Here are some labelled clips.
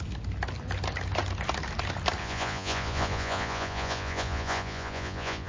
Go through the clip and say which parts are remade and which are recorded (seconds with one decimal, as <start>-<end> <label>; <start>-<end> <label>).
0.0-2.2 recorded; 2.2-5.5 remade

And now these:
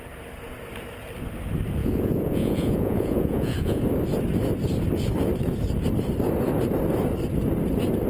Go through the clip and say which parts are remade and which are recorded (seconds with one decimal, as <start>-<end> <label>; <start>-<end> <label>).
0.0-1.8 recorded; 1.8-3.8 remade; 3.8-8.1 recorded

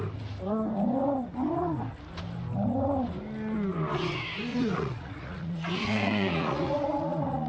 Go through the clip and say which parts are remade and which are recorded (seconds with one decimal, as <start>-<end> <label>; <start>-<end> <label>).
0.0-4.5 recorded; 4.5-7.5 remade

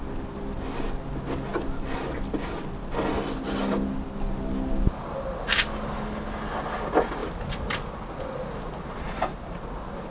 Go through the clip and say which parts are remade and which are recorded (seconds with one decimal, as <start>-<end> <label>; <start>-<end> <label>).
0.0-10.1 recorded

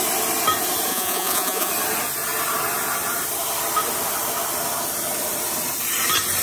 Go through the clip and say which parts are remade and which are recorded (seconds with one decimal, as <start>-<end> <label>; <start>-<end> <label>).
0.0-0.9 recorded; 0.9-1.7 remade; 1.7-6.4 recorded

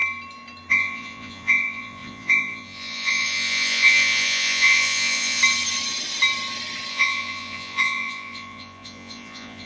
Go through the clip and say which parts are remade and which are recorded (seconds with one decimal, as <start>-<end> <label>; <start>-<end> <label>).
0.0-0.7 recorded; 0.7-5.4 remade; 5.4-6.9 recorded; 6.9-9.7 remade

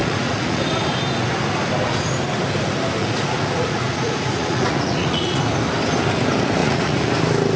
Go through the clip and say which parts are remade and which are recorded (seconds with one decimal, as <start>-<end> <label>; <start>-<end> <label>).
0.0-0.6 remade; 0.6-3.0 recorded; 3.0-5.4 remade; 5.4-6.6 recorded; 6.6-7.1 remade; 7.1-7.6 recorded